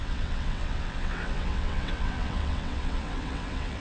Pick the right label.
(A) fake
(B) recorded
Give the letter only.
A